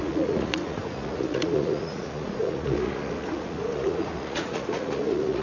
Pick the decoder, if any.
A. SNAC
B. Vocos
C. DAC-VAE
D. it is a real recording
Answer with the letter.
B